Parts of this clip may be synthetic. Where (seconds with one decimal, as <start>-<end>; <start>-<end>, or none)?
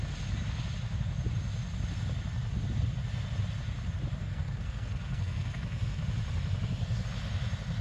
4.2-6.0